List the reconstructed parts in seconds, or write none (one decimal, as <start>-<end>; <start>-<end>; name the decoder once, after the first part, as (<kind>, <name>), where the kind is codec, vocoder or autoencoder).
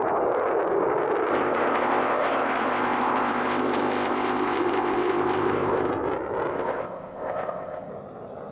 1.3-5.9 (codec, ZipCodec); 6.5-7.9